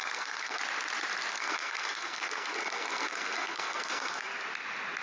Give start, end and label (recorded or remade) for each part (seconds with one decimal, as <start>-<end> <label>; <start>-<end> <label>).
0.0-0.6 remade; 0.6-1.3 recorded; 1.3-4.3 remade; 4.3-5.0 recorded